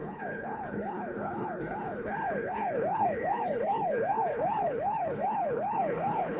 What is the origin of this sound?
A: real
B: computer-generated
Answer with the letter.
B